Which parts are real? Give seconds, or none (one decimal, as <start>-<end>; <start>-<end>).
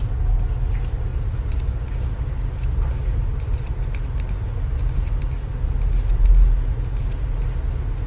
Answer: 0.0-8.1